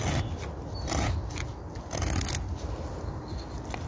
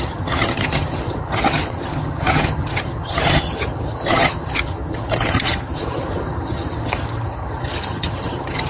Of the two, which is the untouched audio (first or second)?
first